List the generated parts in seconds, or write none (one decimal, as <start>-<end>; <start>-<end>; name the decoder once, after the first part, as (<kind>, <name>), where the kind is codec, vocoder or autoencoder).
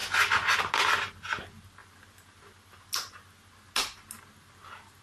none